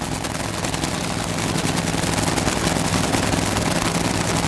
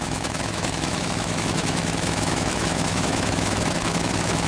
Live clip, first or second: first